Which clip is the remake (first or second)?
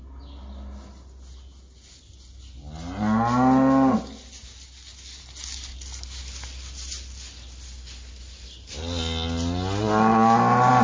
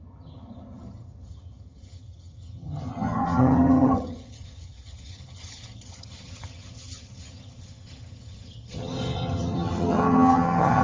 second